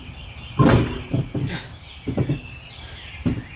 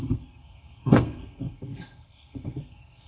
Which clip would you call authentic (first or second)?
first